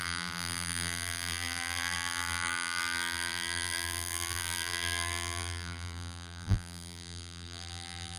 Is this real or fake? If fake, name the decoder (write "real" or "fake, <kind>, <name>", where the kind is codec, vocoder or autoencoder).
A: fake, vocoder, BigVGAN v2